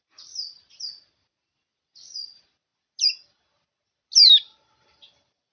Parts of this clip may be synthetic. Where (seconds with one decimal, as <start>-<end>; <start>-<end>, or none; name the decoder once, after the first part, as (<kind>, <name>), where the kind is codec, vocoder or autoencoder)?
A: none